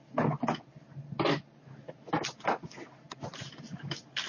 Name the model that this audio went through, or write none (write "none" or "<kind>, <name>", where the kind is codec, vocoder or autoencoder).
none